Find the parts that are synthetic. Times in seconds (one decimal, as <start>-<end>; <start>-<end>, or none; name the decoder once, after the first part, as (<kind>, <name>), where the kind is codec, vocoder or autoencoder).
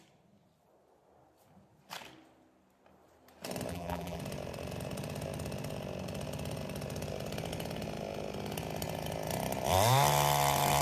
3.7-4.2 (vocoder, BigVGAN v2)